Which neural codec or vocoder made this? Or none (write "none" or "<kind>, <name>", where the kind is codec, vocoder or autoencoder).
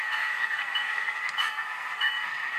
codec, SNAC